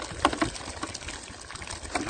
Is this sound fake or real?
real